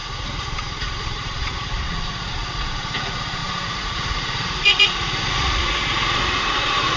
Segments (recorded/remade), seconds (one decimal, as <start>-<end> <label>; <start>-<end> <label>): 0.0-7.0 remade